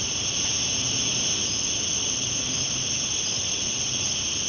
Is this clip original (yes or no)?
yes